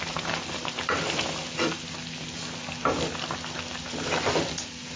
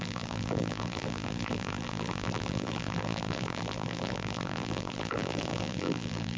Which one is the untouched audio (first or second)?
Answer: first